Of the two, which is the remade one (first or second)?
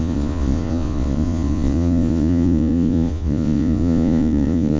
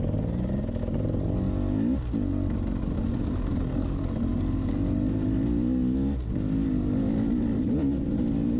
first